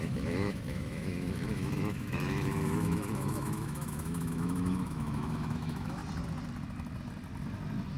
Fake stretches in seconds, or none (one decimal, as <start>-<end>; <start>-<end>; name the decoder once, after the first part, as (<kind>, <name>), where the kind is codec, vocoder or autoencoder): 0.0-6.0 (autoencoder, DAC-VAE)